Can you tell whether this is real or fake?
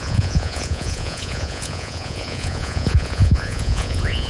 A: fake